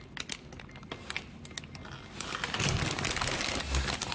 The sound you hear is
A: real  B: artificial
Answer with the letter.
A